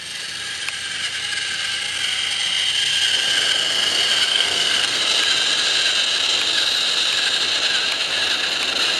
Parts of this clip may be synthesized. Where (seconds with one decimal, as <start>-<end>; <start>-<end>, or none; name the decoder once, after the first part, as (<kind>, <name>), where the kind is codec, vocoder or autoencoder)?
4.3-5.0 (codec, SNAC)